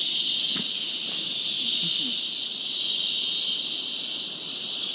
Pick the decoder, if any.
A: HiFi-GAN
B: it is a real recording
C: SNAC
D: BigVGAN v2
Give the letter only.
B